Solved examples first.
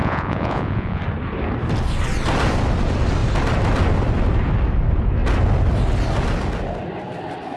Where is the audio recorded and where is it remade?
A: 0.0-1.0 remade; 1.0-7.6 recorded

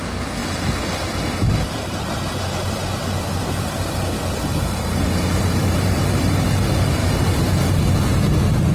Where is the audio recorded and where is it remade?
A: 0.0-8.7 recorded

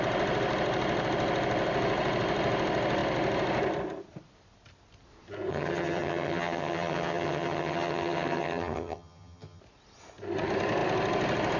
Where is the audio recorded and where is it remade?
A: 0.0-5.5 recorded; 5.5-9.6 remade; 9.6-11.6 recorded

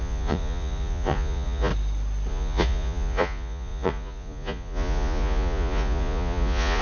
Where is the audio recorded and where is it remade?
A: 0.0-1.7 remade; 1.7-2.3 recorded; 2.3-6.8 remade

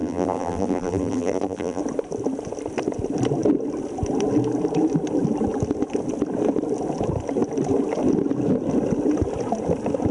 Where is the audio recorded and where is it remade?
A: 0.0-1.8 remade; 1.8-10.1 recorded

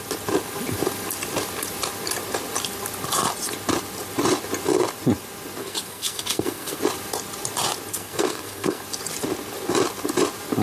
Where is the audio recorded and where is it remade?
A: 0.0-5.6 recorded; 5.6-6.8 remade; 6.8-7.9 recorded; 7.9-8.8 remade; 8.8-10.6 recorded

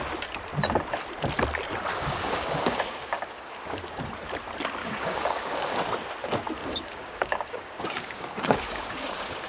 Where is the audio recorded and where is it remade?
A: 0.0-1.9 recorded; 1.9-4.0 remade; 4.0-4.8 recorded; 4.8-5.8 remade; 5.8-6.6 recorded; 6.6-9.5 remade

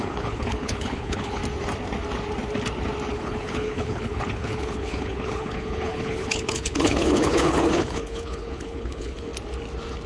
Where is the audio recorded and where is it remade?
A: 0.0-1.4 remade; 1.4-3.1 recorded; 3.1-9.3 remade; 9.3-10.1 recorded